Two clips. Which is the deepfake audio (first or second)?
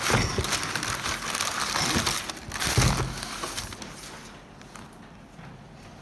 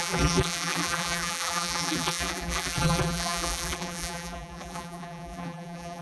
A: second